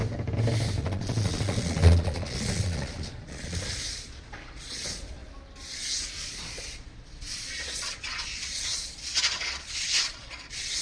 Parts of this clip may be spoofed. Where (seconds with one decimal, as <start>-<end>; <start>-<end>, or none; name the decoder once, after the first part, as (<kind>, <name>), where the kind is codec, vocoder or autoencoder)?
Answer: 0.8-5.2 (vocoder, Vocos); 6.2-10.8

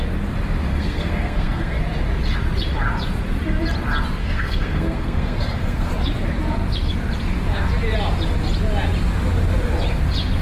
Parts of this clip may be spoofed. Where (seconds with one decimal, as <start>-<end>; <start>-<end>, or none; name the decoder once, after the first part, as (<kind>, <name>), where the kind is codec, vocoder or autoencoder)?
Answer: 0.7-1.8 (codec, SNAC); 4.2-5.9

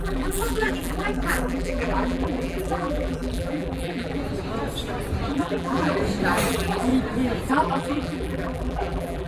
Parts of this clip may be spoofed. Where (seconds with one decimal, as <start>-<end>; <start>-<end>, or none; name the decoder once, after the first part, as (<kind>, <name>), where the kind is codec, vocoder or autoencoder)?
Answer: 0.0-4.2 (vocoder, BigVGAN v2); 5.3-6.0; 6.5-6.9; 7.5-9.3